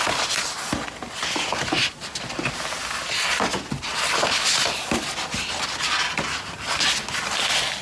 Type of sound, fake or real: real